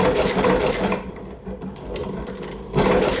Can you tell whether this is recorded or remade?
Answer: recorded